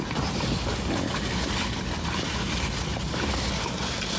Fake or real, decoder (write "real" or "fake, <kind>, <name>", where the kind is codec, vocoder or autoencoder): real